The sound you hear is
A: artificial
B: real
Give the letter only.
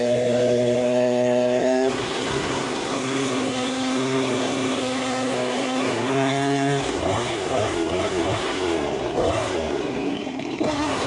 A